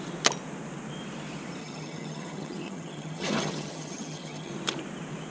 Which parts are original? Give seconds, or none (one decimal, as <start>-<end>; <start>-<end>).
0.0-1.6; 4.5-5.3